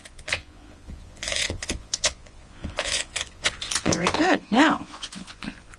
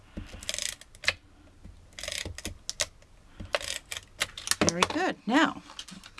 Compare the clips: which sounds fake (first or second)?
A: first